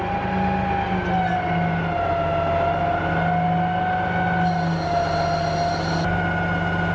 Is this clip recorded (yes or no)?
yes